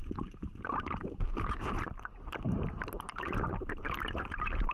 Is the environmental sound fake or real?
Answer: fake